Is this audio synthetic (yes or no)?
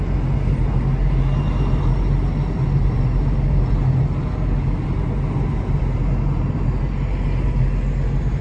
no